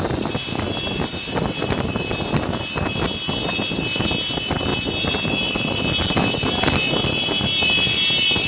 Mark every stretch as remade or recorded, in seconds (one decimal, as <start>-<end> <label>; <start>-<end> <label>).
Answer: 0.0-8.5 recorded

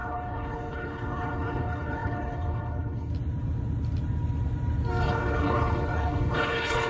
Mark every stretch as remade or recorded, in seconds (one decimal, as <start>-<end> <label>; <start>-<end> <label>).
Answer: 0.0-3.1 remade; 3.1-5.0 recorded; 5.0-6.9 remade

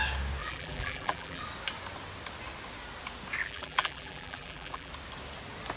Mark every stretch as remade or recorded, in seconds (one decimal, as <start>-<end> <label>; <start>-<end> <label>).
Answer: 0.0-0.4 recorded; 0.4-1.4 remade; 1.4-3.4 recorded; 3.4-4.9 remade; 4.9-5.8 recorded

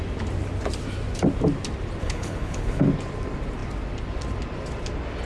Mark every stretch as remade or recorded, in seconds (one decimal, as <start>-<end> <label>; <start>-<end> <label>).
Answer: 0.0-2.0 recorded; 2.0-2.8 remade; 2.8-5.3 recorded

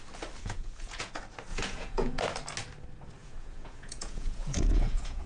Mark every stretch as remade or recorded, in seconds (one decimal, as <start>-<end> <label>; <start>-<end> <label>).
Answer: 0.0-0.4 recorded; 0.4-1.1 remade; 1.1-1.5 recorded; 1.5-2.2 remade; 2.2-3.2 recorded; 3.2-5.3 remade

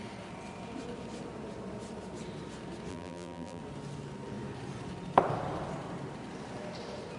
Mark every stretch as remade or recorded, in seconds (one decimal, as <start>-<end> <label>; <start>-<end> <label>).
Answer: 0.0-2.9 recorded; 2.9-3.6 remade; 3.6-7.2 recorded

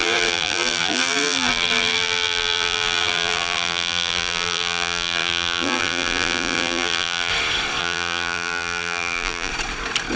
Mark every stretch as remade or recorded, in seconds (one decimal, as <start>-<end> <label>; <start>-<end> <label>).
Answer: 0.0-7.3 remade; 7.3-7.8 recorded; 7.8-9.5 remade; 9.5-10.2 recorded